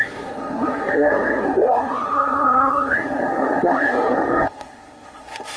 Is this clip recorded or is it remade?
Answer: remade